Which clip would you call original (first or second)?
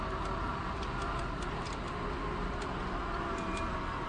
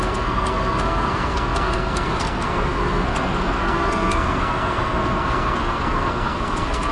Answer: first